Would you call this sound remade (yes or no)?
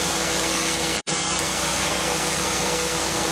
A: yes